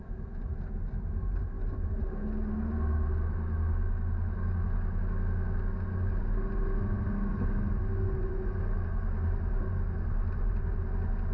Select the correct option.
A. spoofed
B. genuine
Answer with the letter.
B